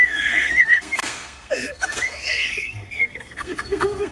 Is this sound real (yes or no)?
no